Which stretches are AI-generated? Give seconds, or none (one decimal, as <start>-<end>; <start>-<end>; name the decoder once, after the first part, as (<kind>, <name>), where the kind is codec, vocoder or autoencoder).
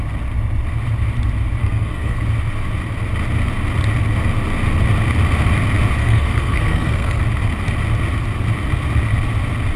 1.6-2.2 (codec, SNAC); 6.0-7.2